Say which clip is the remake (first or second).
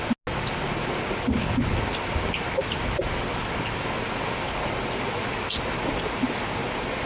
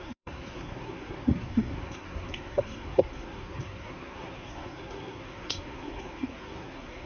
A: second